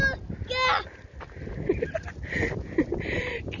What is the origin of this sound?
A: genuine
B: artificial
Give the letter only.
A